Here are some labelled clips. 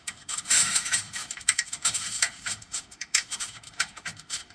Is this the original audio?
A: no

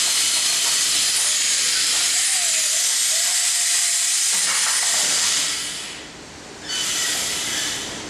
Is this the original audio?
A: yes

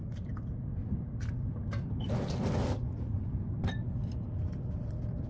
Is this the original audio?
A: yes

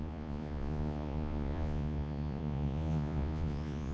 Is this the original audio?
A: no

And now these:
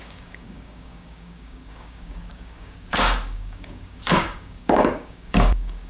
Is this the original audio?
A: no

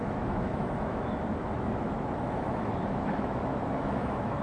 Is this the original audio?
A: no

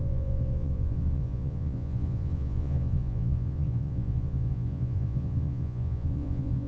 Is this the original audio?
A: no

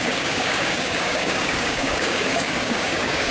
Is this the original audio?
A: no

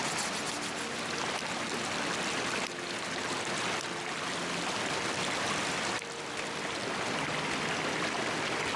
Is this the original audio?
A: yes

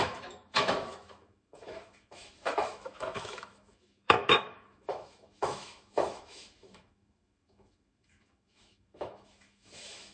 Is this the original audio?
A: no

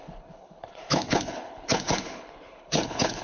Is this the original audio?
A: no